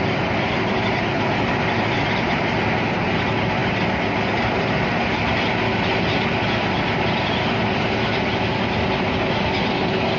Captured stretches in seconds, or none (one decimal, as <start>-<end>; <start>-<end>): 0.0-10.2